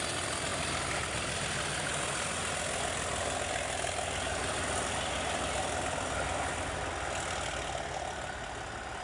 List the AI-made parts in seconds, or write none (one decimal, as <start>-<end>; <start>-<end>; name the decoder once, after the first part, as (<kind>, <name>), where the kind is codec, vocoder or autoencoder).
none